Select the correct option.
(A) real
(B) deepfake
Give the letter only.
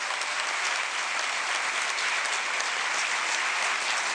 A